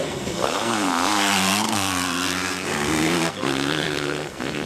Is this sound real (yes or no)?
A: no